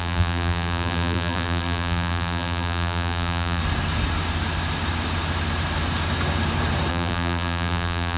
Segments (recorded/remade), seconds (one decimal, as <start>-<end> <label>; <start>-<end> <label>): 0.0-3.6 remade; 3.6-6.9 recorded; 6.9-8.2 remade